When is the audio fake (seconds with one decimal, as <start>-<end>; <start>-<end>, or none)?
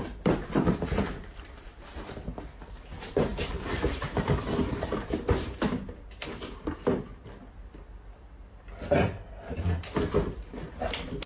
0.0-7.1; 9.3-11.3